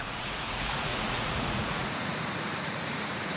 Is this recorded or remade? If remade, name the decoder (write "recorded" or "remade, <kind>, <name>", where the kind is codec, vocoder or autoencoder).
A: remade, vocoder, Vocos